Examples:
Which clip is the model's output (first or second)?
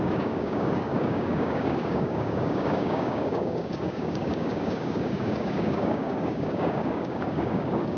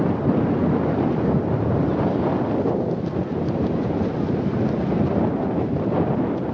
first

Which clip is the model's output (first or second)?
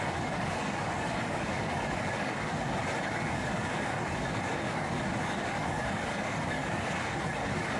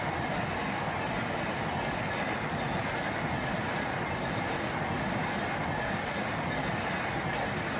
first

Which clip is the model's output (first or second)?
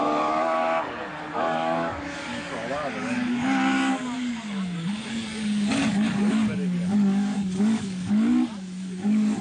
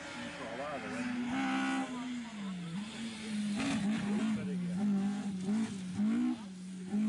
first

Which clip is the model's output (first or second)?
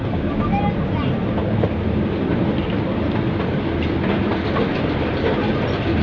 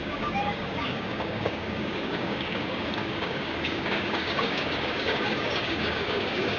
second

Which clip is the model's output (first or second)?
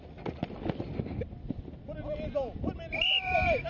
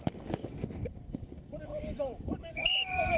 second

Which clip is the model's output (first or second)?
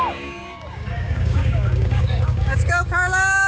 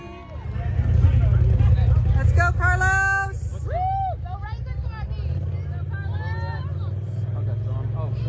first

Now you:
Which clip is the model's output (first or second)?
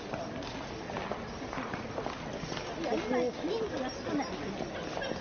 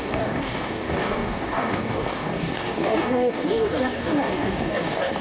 second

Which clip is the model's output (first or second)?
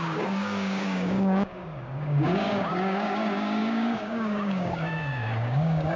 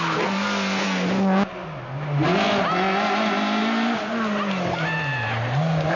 first